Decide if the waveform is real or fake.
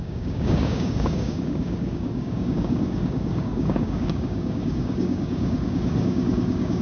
fake